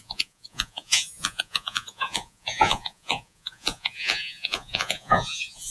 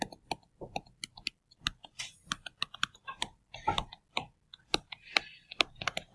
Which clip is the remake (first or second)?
first